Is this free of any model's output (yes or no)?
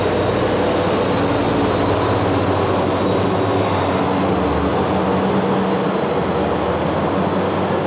yes